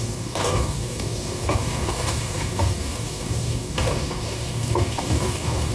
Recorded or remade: remade